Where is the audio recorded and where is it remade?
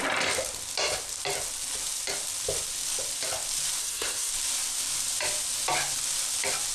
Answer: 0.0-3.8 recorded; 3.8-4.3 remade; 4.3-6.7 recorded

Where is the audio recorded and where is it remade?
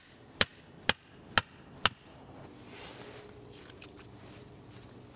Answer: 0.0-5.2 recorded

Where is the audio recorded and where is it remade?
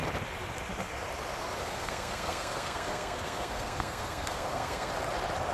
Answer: 0.0-1.6 recorded; 1.6-4.9 remade; 4.9-5.5 recorded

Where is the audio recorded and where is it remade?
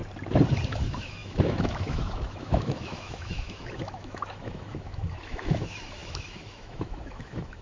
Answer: 0.0-0.7 recorded; 0.7-7.6 remade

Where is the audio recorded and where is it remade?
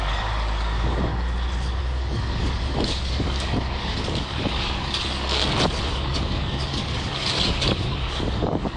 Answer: 0.0-1.1 remade; 1.1-1.8 recorded; 1.8-5.4 remade; 5.4-5.9 recorded; 5.9-8.8 remade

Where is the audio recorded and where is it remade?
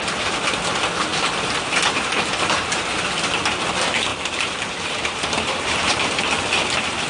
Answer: 0.0-4.1 recorded; 4.1-6.2 remade; 6.2-7.1 recorded